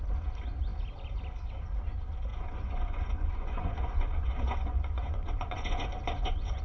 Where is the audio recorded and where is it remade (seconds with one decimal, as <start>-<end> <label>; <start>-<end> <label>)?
0.0-2.3 recorded; 2.3-6.6 remade